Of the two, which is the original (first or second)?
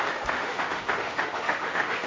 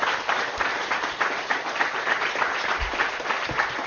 second